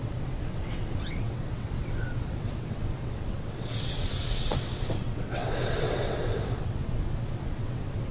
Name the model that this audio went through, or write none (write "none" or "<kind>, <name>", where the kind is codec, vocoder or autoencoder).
vocoder, WaveNeXt